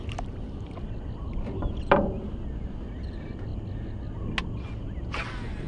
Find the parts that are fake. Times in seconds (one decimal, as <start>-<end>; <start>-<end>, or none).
none